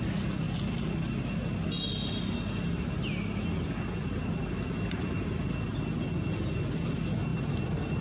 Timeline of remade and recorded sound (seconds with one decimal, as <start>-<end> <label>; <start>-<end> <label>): 0.0-8.0 recorded